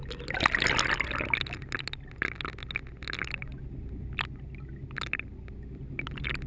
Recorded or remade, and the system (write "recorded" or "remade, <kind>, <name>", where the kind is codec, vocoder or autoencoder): recorded